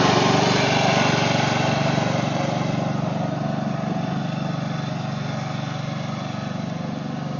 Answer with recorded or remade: recorded